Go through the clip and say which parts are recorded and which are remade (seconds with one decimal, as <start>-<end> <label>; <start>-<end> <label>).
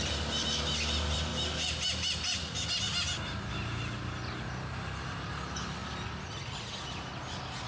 0.0-7.7 recorded